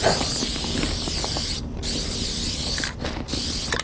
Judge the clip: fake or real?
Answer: real